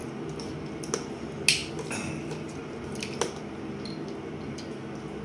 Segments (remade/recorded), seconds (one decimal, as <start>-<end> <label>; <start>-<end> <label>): 0.0-5.2 recorded